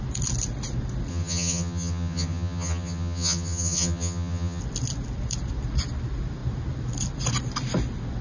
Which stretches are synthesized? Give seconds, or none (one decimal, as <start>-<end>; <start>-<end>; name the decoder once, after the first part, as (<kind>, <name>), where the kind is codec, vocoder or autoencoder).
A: 1.1-4.6 (vocoder, HiFi-GAN)